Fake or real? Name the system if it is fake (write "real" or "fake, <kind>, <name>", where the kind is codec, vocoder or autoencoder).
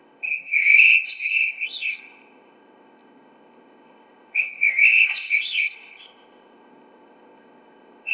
fake, codec, ZipCodec